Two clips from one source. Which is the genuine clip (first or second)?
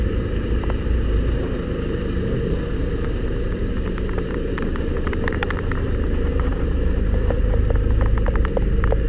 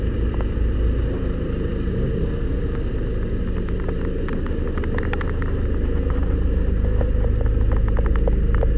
second